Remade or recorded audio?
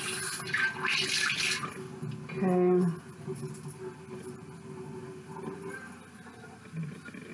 recorded